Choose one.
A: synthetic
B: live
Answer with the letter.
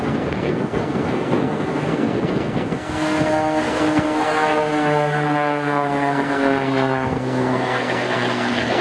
A